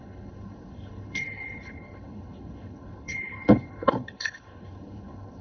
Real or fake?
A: fake